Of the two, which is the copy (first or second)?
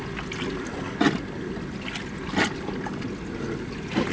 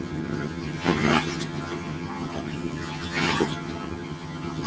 second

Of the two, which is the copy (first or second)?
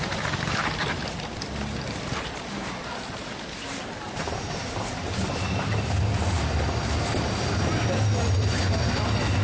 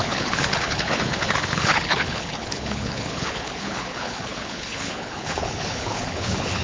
second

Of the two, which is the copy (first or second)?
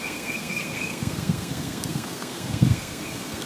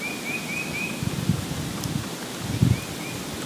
first